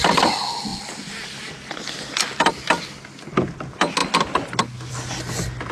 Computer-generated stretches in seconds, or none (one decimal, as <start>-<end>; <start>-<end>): none